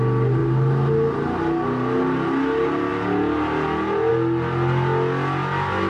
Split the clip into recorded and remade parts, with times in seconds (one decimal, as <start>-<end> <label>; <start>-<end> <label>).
0.0-5.9 recorded